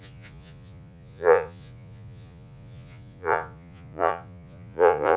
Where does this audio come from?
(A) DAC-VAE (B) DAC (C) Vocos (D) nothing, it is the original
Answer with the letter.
C